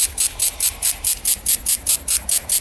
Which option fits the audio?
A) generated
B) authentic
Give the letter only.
B